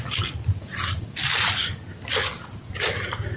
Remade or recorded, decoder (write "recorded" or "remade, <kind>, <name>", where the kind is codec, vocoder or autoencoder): recorded